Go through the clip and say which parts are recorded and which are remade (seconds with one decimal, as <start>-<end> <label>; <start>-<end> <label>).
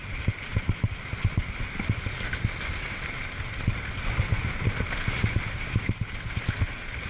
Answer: 0.0-7.1 recorded